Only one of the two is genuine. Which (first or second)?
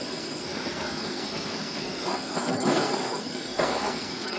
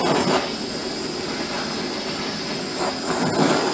second